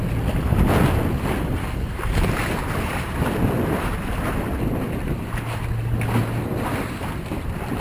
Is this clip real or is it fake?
real